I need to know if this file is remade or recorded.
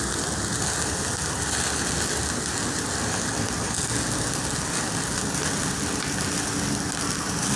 recorded